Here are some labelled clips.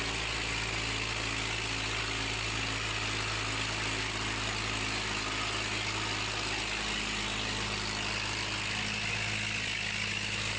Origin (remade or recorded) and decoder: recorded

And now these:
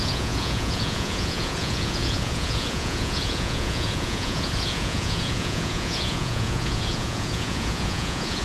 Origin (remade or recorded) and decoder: remade, vocoder, Vocos